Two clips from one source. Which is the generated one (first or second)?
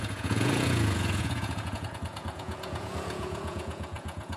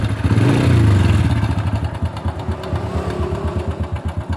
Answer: first